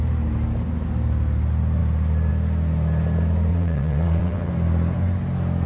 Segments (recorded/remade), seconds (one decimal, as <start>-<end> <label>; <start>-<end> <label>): 0.0-3.5 recorded; 3.5-4.5 remade; 4.5-5.7 recorded